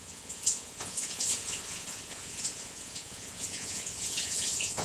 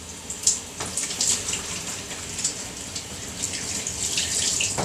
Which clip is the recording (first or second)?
second